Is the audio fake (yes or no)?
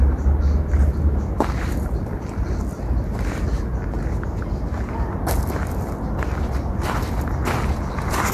no